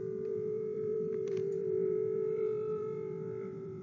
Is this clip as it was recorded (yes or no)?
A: no